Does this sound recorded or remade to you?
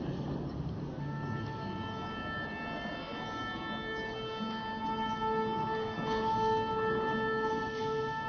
recorded